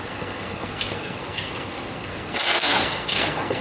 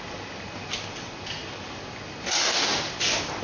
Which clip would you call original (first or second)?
second